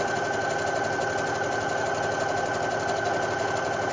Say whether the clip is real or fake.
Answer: real